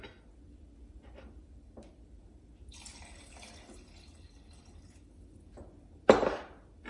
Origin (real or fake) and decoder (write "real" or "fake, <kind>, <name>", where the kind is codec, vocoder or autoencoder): real